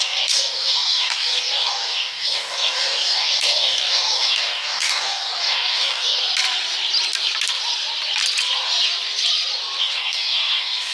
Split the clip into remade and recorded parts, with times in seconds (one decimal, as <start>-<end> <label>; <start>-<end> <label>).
0.0-6.2 remade; 6.2-9.8 recorded; 9.8-10.9 remade